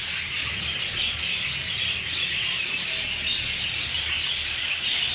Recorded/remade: recorded